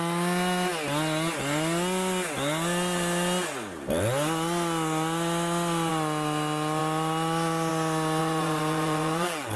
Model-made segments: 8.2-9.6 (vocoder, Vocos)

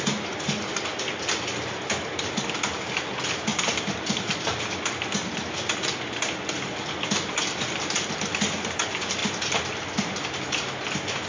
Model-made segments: 3.5-7.8 (vocoder, BigVGAN v2)

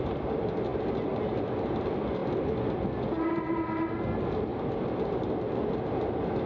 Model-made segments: none

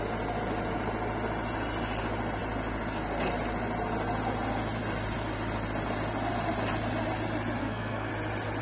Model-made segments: 7.6-8.1 (codec, SNAC)

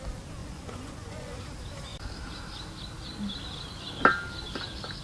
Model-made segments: 0.4-1.4 (vocoder, Vocos)

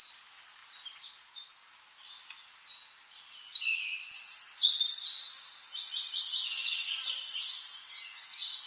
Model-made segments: none

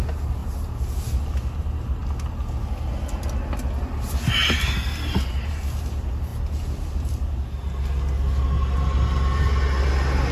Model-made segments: none